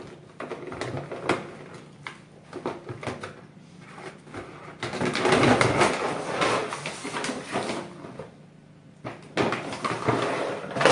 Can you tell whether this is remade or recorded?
recorded